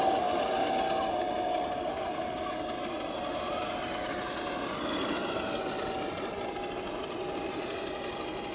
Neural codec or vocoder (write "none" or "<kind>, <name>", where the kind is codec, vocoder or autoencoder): none